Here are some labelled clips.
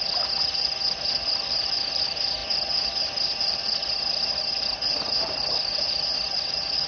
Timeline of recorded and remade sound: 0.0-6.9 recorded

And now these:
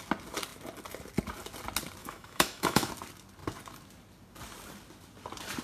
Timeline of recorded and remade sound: 0.0-2.0 recorded; 2.0-2.9 remade; 2.9-5.6 recorded

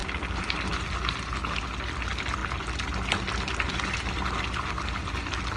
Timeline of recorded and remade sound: 0.0-5.6 recorded

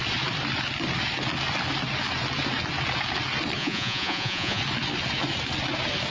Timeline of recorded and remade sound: 0.0-3.6 recorded; 3.6-4.6 remade; 4.6-6.1 recorded

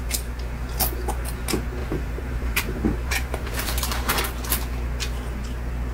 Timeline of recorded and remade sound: 0.0-1.8 recorded; 1.8-4.2 remade; 4.2-5.9 recorded

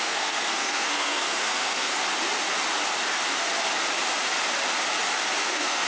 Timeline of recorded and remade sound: 0.0-1.9 remade; 1.9-5.4 recorded; 5.4-5.9 remade

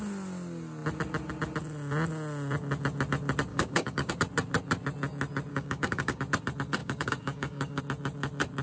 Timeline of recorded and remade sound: 0.0-3.5 recorded; 3.5-4.1 remade; 4.1-5.5 recorded; 5.5-6.2 remade; 6.2-6.8 recorded; 6.8-7.8 remade; 7.8-8.6 recorded

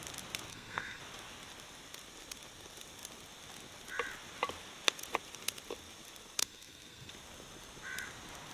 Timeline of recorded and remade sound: 0.0-0.5 recorded; 0.5-1.0 remade; 1.0-6.4 recorded; 6.4-7.1 remade; 7.1-8.5 recorded